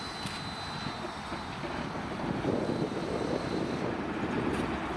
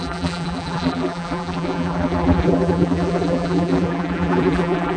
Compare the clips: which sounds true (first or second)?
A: first